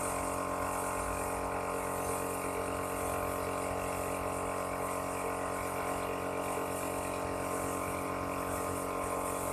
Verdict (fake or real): real